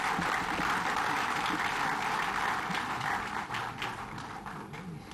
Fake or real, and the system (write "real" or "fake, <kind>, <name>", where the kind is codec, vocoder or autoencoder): real